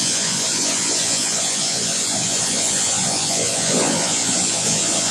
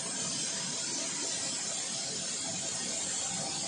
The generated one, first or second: first